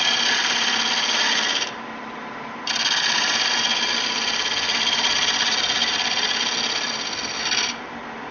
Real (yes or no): yes